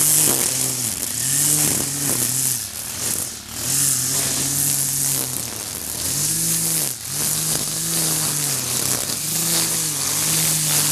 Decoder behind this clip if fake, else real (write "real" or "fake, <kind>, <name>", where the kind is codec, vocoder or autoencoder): real